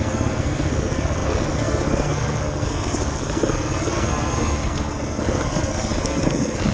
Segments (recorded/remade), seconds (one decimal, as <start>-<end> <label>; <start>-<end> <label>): 0.0-6.7 remade